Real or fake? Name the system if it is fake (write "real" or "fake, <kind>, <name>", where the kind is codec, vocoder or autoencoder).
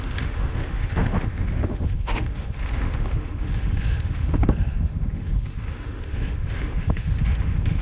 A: fake, autoencoder, DAC-VAE